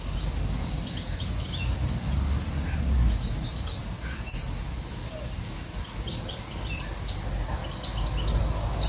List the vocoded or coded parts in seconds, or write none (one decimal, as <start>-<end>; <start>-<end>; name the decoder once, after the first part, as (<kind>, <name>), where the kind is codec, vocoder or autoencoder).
none